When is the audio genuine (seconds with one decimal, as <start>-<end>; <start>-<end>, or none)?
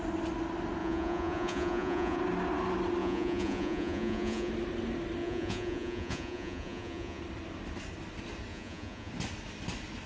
0.0-0.8; 2.2-3.0; 4.5-5.2; 7.2-8.5; 9.1-10.1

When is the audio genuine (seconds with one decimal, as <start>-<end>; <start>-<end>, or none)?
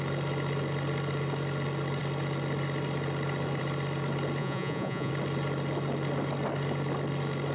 0.0-4.4; 5.1-7.5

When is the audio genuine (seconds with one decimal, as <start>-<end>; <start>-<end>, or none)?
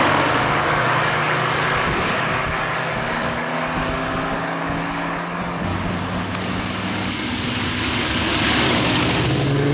5.7-6.4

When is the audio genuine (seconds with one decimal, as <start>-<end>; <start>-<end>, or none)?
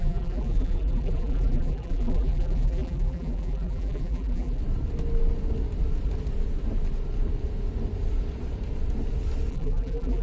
4.6-9.5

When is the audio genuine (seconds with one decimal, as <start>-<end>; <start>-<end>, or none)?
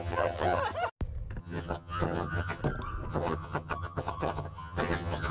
0.6-1.4; 2.6-3.1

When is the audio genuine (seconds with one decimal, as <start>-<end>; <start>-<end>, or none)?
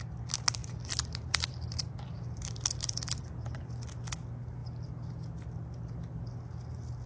0.0-0.6; 3.7-7.1